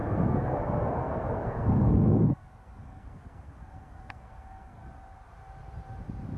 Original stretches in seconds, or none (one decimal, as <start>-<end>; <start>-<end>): 4.8-6.4